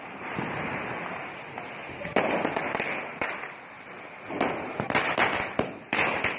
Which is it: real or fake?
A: real